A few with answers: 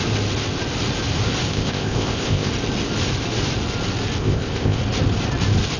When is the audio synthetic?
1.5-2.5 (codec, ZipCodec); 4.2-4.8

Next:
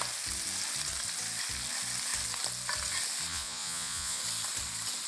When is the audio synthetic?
3.3-4.2 (vocoder, Vocos)

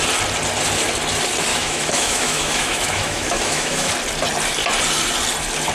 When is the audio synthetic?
1.5-3.9 (autoencoder, DAC-VAE)

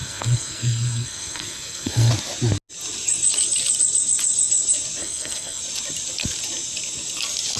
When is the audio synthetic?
0.0-2.1 (codec, SNAC); 5.0-5.6